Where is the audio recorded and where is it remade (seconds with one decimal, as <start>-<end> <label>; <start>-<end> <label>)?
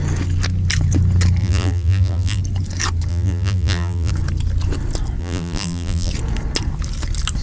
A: 0.0-1.4 recorded; 1.4-2.4 remade; 2.4-3.1 recorded; 3.1-4.1 remade; 4.1-5.2 recorded; 5.2-6.1 remade; 6.1-7.4 recorded